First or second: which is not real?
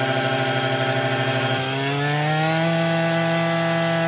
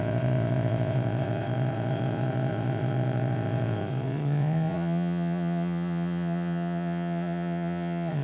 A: second